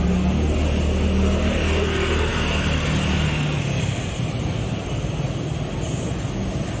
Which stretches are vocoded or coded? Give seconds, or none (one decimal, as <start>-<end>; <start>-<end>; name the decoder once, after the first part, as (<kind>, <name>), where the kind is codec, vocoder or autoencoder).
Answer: none